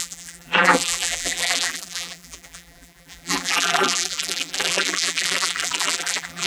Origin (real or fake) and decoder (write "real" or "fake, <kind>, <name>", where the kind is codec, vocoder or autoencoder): fake, vocoder, BigVGAN v2